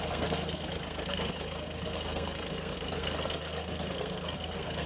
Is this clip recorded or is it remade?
remade